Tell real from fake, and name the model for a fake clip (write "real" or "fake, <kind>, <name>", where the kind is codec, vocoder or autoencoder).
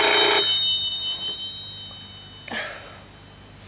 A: real